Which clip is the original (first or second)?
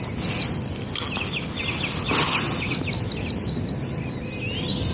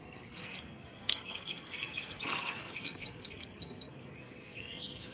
first